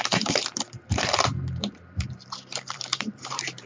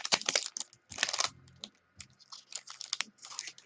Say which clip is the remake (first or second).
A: first